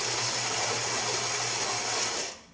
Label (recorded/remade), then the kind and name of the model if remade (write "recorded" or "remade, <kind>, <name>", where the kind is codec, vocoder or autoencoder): recorded